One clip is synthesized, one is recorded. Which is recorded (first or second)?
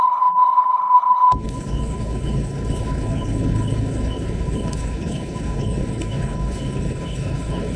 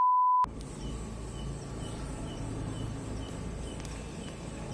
second